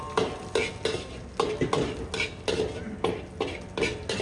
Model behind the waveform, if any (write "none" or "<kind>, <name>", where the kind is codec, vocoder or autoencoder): none